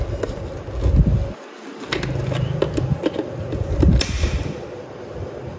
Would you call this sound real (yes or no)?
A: yes